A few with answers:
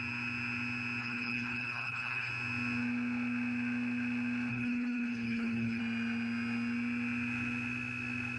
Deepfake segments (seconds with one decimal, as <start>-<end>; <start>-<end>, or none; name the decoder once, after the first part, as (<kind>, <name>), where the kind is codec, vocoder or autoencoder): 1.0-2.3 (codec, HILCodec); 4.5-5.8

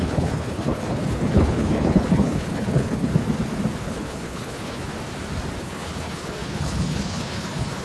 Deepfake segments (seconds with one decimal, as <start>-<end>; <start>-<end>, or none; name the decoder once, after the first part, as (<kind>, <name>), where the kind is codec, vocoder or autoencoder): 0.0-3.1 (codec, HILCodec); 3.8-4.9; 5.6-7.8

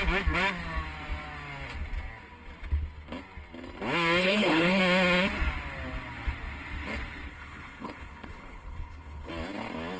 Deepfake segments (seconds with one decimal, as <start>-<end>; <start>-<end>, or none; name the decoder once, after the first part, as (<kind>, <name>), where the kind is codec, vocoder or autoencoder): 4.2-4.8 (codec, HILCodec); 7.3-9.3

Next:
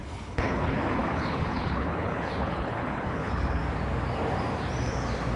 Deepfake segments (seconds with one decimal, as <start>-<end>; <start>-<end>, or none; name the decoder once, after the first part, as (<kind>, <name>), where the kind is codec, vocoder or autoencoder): 0.0-3.6 (codec, HILCodec)

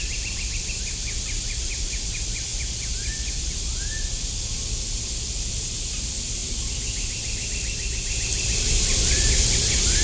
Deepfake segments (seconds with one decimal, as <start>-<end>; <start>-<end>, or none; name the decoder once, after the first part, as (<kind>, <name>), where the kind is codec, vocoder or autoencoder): none

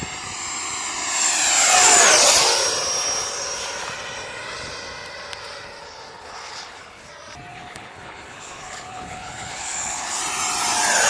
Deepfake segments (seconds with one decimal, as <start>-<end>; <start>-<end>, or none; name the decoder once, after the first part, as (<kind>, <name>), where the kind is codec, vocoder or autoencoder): 5.8-7.1 (codec, HILCodec); 7.5-10.2

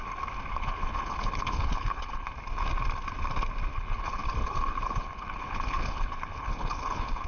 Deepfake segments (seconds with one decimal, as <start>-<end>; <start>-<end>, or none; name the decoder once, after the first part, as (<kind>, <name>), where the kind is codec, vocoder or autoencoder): 0.5-2.3 (codec, HILCodec); 3.7-7.3